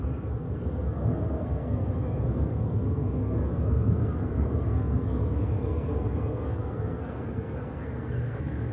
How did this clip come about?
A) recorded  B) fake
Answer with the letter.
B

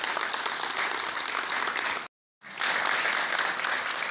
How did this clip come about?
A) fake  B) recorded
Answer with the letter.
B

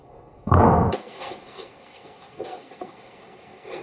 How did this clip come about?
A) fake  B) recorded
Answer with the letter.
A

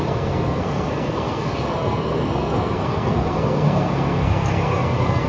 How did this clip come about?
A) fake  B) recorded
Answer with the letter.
A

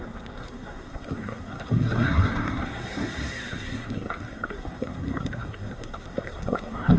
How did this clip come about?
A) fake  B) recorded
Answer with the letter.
A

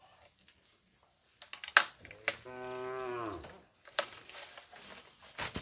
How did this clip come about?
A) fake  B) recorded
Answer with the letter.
B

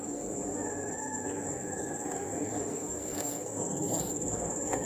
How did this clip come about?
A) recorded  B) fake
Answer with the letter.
B